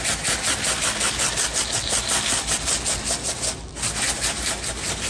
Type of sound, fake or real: real